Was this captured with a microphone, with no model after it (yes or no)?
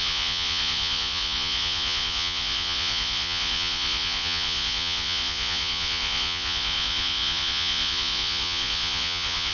no